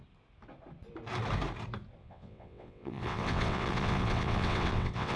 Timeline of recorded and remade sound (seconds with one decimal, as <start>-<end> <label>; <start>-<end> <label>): 0.0-2.0 recorded; 2.0-5.2 remade

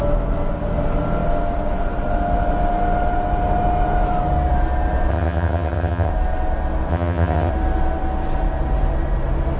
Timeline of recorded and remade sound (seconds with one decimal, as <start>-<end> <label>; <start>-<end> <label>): 0.0-5.1 recorded; 5.1-6.1 remade; 6.1-6.9 recorded; 6.9-7.5 remade; 7.5-9.6 recorded

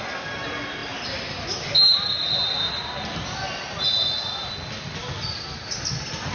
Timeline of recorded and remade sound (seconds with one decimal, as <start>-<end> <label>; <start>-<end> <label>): 0.0-6.3 recorded

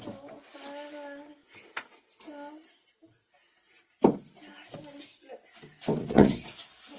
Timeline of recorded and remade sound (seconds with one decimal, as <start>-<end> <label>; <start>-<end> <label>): 0.0-5.9 recorded; 5.9-6.5 remade; 6.5-7.0 recorded

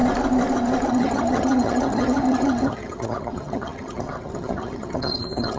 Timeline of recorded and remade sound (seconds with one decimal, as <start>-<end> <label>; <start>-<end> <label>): 0.0-0.9 recorded; 0.9-5.6 remade